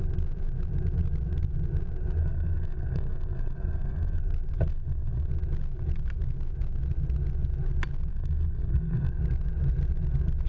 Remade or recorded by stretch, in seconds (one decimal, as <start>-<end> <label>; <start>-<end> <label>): 0.0-2.2 recorded; 2.2-4.2 remade; 4.2-4.7 recorded; 4.7-5.3 remade; 5.3-8.1 recorded; 8.1-9.2 remade; 9.2-10.5 recorded